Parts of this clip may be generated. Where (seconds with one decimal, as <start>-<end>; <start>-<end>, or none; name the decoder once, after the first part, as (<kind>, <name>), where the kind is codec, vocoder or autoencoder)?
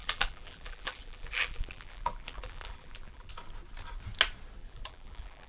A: 0.0-3.3 (vocoder, BigVGAN v2); 4.6-5.5